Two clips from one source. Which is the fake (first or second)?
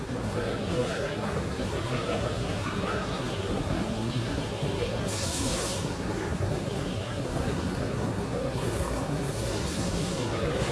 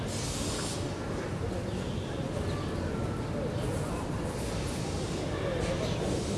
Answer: first